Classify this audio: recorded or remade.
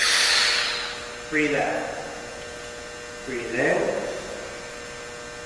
recorded